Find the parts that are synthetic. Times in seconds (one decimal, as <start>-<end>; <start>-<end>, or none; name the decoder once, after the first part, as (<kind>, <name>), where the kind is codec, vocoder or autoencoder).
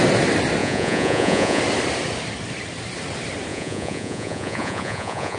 0.6-1.6 (vocoder, Vocos); 3.5-5.4